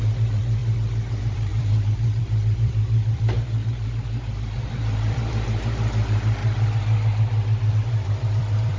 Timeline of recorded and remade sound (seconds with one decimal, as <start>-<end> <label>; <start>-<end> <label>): 0.0-0.6 remade; 0.6-1.1 recorded; 1.1-6.4 remade; 6.4-7.7 recorded; 7.7-8.8 remade